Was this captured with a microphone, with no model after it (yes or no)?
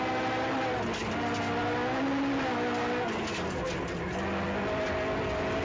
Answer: yes